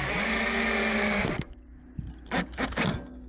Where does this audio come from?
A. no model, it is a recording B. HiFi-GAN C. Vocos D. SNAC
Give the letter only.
A